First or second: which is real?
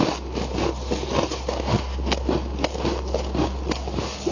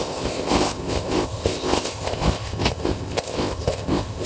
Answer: first